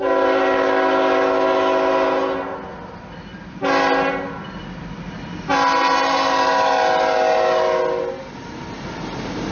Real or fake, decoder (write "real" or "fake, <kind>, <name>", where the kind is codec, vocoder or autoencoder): real